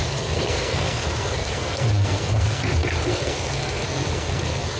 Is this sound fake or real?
fake